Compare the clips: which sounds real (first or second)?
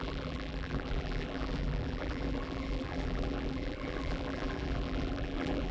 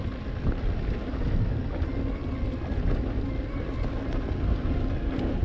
second